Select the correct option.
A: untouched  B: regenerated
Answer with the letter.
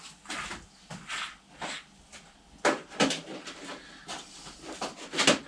A